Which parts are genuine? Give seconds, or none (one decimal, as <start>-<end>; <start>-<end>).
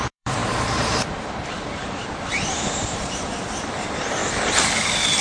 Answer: 4.2-5.2